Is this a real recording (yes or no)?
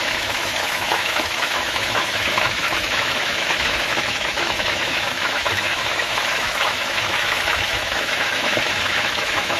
no